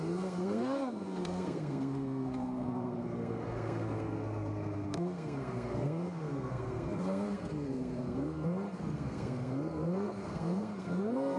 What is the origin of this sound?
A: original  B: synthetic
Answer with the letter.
B